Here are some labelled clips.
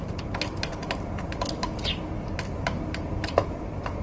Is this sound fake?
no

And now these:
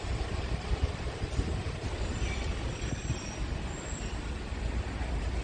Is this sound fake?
no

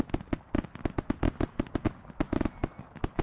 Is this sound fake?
no